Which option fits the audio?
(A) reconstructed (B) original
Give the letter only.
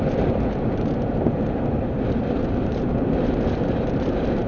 A